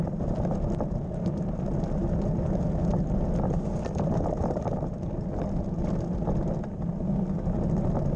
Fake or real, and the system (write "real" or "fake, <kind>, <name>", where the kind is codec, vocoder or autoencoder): real